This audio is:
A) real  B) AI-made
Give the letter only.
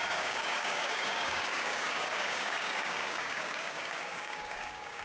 B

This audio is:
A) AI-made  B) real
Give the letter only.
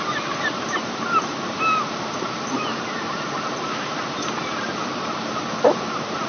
A